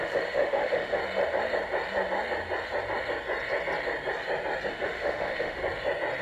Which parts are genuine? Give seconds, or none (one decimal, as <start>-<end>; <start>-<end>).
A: 1.0-4.7; 5.6-6.2